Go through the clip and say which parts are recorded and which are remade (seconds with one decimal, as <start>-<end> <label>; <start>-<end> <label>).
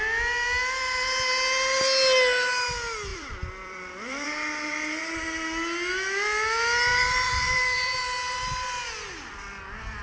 0.0-3.1 recorded; 3.1-5.0 remade; 5.0-6.9 recorded; 6.9-8.0 remade; 8.0-10.0 recorded